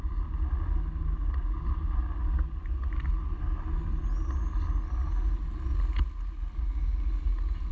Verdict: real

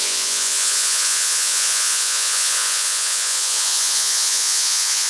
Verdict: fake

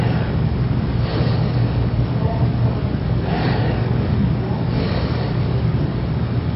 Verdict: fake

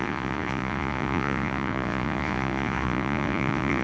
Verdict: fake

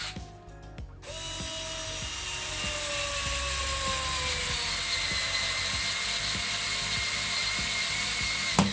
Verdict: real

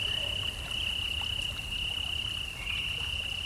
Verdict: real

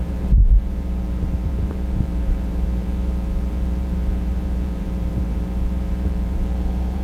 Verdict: fake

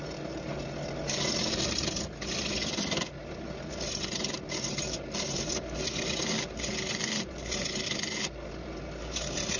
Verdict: real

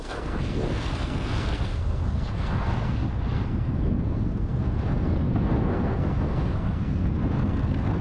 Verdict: fake